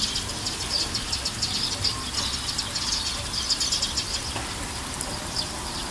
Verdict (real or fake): real